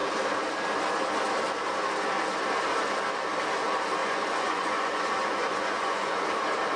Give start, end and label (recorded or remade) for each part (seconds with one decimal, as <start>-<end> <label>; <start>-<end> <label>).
0.0-4.0 recorded; 4.0-6.2 remade; 6.2-6.8 recorded